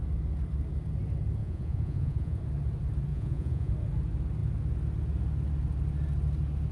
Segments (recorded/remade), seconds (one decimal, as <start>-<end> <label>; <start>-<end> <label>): 0.0-1.4 recorded; 1.4-2.4 remade; 2.4-3.1 recorded; 3.1-3.7 remade; 3.7-6.7 recorded